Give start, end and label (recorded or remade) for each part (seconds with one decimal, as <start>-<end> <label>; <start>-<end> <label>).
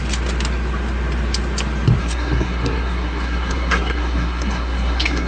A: 0.0-2.0 recorded; 2.0-5.3 remade